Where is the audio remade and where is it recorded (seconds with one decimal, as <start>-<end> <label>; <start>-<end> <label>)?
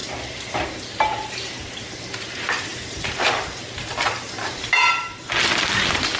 0.0-0.8 remade; 0.8-2.7 recorded; 2.7-3.2 remade; 3.2-6.2 recorded